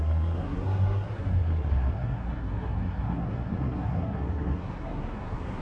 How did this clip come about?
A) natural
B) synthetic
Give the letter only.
B